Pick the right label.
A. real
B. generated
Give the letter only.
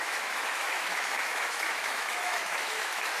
B